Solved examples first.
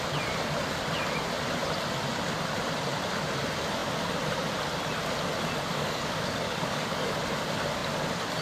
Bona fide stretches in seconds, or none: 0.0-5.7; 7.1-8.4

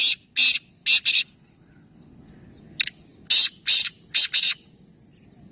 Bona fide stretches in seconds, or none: 0.0-1.1; 2.5-5.5